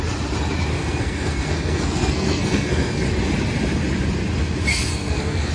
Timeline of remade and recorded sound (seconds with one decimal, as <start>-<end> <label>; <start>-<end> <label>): 0.0-0.8 recorded; 0.8-3.0 remade; 3.0-4.7 recorded; 4.7-5.5 remade